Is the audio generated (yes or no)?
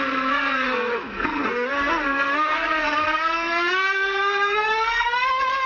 yes